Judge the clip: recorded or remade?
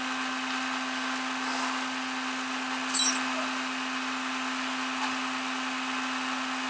recorded